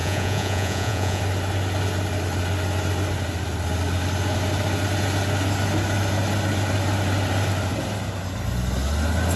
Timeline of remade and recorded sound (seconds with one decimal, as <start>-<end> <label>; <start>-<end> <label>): 0.0-1.2 remade; 1.2-9.4 recorded